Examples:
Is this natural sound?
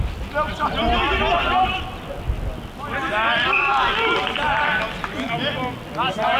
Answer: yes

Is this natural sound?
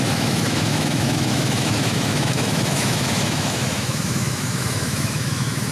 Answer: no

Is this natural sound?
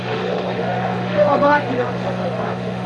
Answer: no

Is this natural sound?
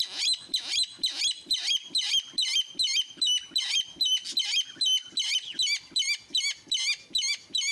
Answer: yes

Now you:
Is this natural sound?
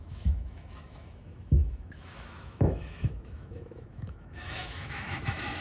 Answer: no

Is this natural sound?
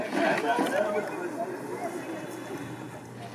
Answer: yes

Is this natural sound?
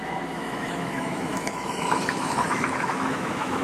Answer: no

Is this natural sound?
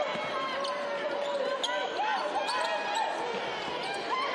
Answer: yes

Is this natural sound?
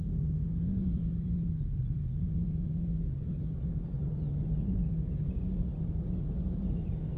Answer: yes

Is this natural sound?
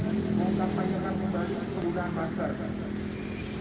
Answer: yes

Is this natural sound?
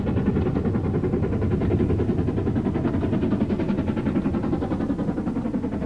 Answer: yes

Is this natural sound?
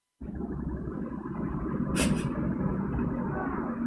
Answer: yes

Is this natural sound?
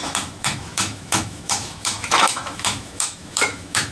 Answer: no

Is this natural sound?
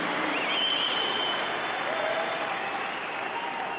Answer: yes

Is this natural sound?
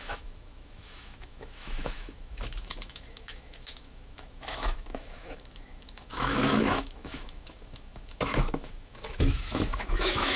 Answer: no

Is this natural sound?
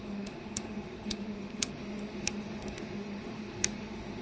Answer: no